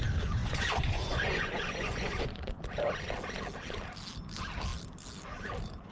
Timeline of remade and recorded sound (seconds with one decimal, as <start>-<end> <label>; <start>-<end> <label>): 0.0-0.4 recorded; 0.4-2.6 remade; 2.6-5.9 recorded